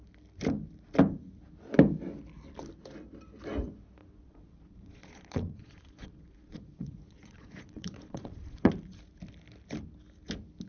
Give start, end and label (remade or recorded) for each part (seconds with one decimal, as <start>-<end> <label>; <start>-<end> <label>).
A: 0.0-4.0 recorded; 4.0-8.7 remade; 8.7-10.7 recorded